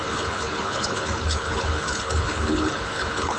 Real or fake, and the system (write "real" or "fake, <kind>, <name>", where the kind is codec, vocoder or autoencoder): fake, codec, HILCodec